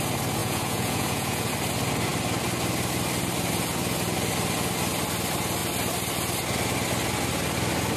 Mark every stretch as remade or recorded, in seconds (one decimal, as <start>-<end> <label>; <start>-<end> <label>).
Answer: 0.0-0.4 recorded; 0.4-1.5 remade; 1.5-8.0 recorded